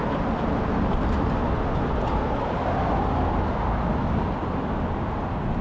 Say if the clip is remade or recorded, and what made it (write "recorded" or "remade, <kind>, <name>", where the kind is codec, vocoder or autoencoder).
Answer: recorded